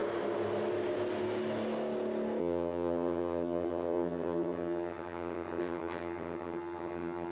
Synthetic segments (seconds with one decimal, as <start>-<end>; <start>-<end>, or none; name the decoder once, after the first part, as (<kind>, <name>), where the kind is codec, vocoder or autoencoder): 2.4-7.3 (vocoder, HiFi-GAN)